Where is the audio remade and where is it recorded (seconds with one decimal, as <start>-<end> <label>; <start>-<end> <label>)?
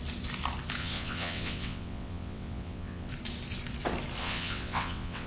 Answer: 0.0-0.8 recorded; 0.8-3.1 remade; 3.1-4.2 recorded; 4.2-5.3 remade